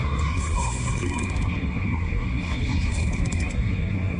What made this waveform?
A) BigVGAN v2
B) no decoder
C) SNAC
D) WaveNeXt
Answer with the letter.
C